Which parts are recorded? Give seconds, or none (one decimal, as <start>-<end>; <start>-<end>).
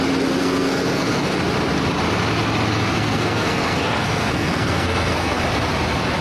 0.0-0.4; 1.4-2.7; 5.4-6.2